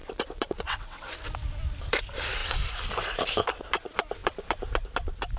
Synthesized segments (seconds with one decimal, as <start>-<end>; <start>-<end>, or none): 0.0-1.3